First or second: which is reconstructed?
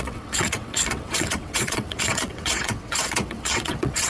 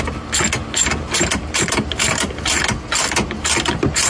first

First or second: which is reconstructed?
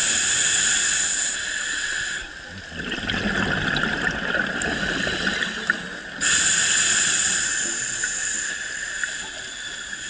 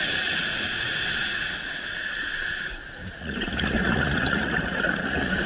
second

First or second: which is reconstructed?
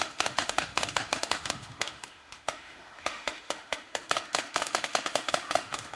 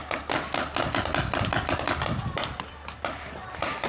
first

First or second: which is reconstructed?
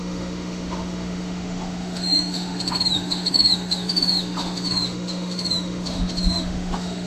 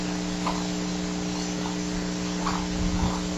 first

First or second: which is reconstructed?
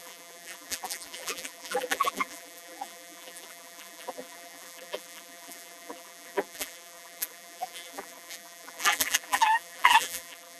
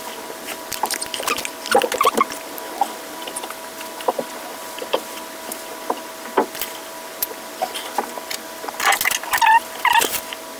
first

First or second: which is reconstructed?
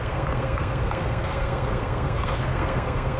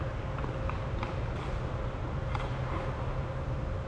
first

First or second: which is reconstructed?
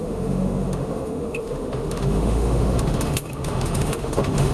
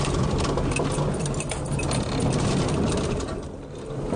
first